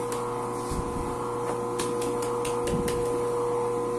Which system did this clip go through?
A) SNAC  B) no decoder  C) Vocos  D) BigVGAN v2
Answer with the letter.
B